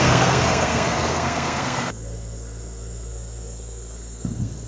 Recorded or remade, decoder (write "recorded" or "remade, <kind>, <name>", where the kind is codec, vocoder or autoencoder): remade, codec, SNAC